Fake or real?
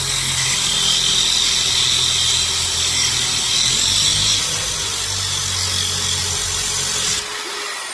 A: real